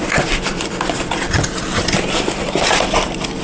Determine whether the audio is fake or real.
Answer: fake